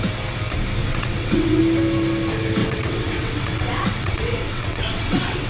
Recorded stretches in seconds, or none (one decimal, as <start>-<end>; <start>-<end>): 0.0-0.8; 1.6-2.6